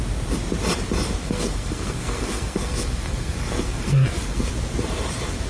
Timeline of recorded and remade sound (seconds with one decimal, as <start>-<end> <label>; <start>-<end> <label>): 0.0-1.2 recorded; 1.2-4.5 remade; 4.5-5.5 recorded